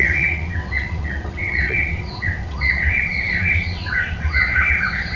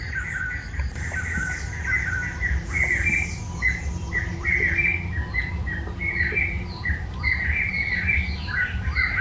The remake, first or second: first